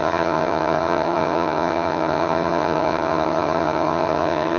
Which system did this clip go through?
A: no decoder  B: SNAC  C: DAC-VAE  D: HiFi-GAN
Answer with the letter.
D